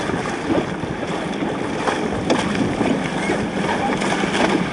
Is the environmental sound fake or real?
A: real